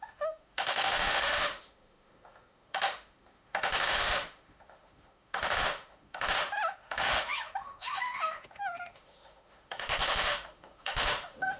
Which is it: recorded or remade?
remade